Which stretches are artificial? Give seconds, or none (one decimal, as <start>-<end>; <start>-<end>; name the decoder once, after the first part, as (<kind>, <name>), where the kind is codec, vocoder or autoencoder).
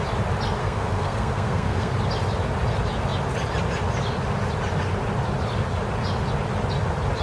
0.6-1.9 (codec, SNAC)